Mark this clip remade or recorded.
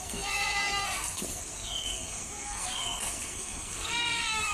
remade